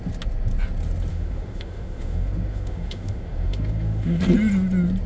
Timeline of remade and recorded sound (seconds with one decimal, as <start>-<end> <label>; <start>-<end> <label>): 0.0-1.1 recorded; 1.1-4.2 remade; 4.2-5.1 recorded